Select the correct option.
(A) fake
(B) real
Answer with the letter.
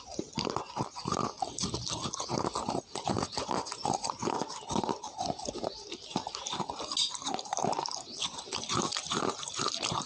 B